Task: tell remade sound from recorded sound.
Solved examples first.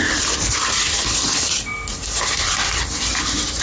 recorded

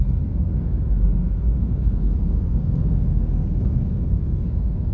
remade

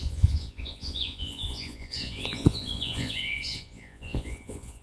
remade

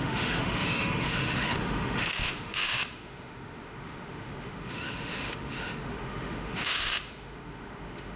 remade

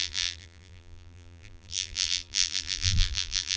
remade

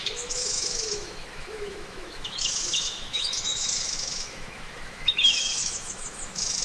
remade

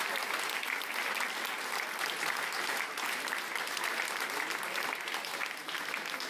recorded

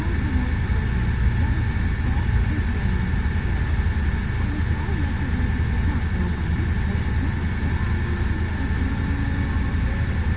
recorded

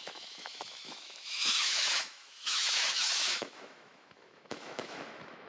remade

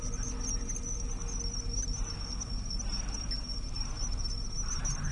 recorded